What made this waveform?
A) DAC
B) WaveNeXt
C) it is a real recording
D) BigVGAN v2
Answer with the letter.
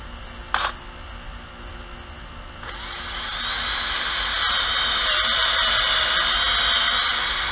C